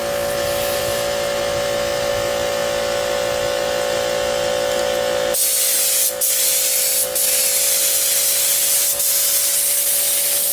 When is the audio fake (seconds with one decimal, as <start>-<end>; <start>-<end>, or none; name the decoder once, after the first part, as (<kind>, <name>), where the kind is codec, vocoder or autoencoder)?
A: none